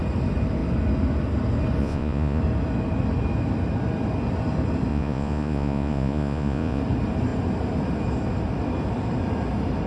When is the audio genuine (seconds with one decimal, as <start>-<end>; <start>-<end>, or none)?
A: 0.0-1.8; 2.4-4.9; 6.8-9.9